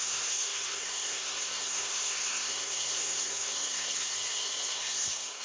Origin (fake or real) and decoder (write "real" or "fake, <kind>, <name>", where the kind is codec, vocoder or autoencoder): fake, codec, SNAC